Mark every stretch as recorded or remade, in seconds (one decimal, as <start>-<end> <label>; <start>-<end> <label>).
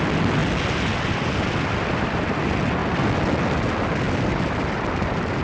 0.0-5.4 recorded